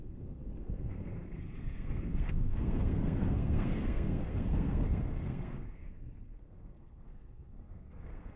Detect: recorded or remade remade